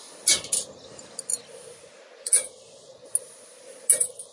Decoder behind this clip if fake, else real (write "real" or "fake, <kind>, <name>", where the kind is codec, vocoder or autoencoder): real